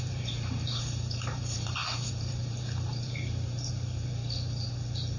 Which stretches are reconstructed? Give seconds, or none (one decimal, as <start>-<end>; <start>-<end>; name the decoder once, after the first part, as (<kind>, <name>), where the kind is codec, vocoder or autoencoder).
0.0-4.2 (vocoder, BigVGAN v2)